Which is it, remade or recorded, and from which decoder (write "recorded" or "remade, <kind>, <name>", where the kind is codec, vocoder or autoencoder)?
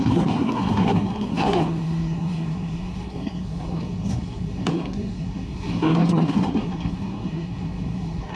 remade, codec, SNAC